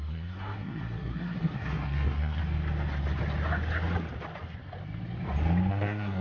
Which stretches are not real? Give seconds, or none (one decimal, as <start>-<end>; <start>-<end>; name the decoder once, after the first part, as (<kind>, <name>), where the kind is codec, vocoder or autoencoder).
0.0-2.4 (codec, SNAC); 5.7-6.2